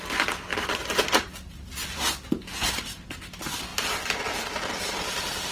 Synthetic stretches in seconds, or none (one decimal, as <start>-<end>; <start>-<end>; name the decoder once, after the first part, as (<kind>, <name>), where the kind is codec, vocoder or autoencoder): 0.5-2.1 (vocoder, BigVGAN v2)